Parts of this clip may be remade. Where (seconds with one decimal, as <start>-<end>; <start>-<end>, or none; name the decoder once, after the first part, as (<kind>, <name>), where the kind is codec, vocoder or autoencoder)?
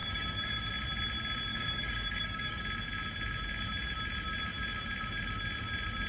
0.0-0.7 (codec, DAC); 1.5-2.6